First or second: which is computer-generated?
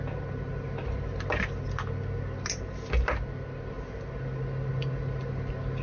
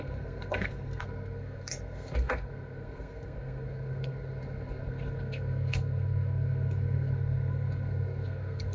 second